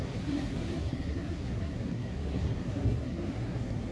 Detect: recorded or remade remade